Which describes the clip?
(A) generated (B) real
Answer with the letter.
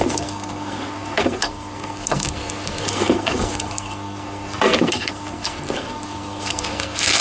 A